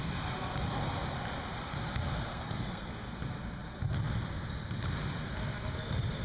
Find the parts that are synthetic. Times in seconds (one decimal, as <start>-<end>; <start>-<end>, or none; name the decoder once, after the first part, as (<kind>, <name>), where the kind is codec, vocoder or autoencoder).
2.3-2.9 (codec, SNAC)